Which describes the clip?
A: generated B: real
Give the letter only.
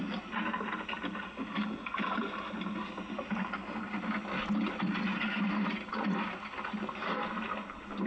B